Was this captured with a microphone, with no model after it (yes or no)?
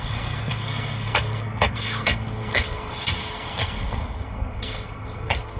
no